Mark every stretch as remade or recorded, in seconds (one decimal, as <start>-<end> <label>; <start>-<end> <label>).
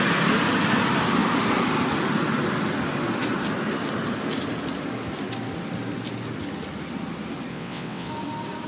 0.0-7.5 recorded; 7.5-8.1 remade; 8.1-8.7 recorded